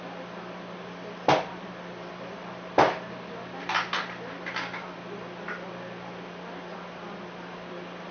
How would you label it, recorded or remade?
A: recorded